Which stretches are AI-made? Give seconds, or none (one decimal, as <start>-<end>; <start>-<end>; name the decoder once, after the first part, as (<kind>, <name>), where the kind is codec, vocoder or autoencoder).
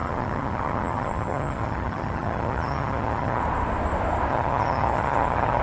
0.0-3.4 (vocoder, HiFi-GAN); 4.3-5.6